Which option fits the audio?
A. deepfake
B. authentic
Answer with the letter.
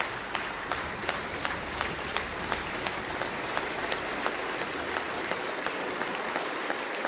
A